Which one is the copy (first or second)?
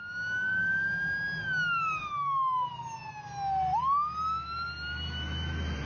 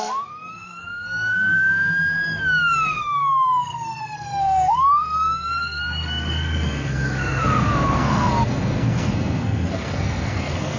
second